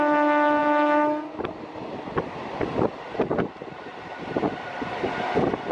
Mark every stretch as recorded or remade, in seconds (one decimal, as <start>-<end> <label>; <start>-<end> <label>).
0.0-5.7 recorded